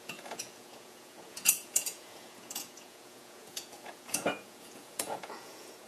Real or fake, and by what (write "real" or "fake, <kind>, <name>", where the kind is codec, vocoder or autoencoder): fake, vocoder, Vocos